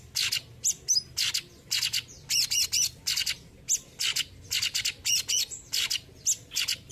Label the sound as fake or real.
real